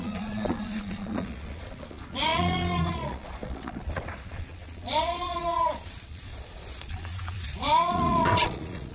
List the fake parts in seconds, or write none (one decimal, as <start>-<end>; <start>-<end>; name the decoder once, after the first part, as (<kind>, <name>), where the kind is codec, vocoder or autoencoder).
0.0-8.9 (vocoder, Vocos)